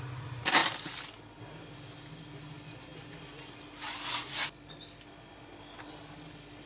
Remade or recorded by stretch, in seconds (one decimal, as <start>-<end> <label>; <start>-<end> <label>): 0.0-6.7 recorded